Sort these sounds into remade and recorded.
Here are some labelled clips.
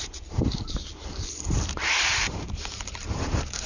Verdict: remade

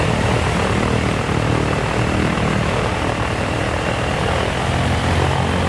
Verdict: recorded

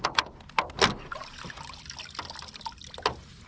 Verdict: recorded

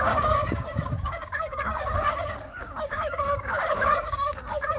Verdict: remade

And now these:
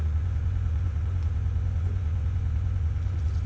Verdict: remade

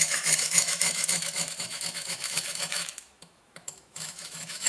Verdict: remade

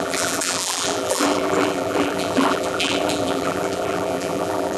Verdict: remade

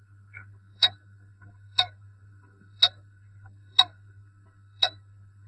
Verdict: remade